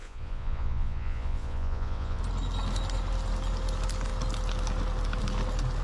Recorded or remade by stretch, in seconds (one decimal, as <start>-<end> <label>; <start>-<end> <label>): 0.0-2.2 remade; 2.2-5.8 recorded

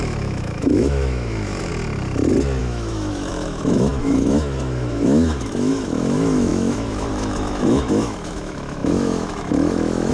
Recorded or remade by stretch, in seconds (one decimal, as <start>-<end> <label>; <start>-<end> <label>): 0.0-1.7 remade; 1.7-2.6 recorded; 2.6-10.1 remade

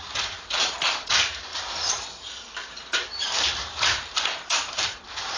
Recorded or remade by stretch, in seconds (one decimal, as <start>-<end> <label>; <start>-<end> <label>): 0.0-5.4 remade

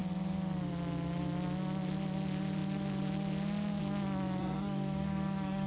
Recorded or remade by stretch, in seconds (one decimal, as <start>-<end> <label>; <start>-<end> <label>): 0.0-4.4 recorded; 4.4-5.7 remade

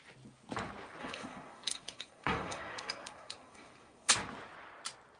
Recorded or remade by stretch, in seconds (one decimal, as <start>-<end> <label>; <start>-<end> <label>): 0.0-1.0 recorded; 1.0-4.1 remade; 4.1-5.2 recorded